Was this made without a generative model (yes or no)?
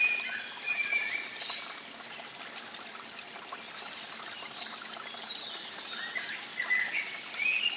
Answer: yes